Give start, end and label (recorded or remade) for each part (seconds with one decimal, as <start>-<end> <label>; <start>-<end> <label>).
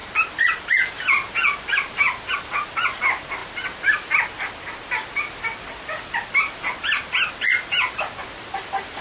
0.0-8.2 recorded; 8.2-9.0 remade